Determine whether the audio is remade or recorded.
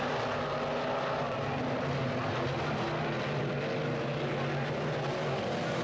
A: recorded